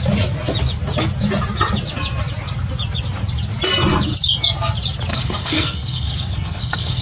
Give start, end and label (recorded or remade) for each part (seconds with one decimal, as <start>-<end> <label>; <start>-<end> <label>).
0.0-5.1 recorded; 5.1-7.0 remade